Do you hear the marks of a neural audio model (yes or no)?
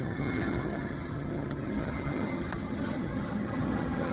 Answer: yes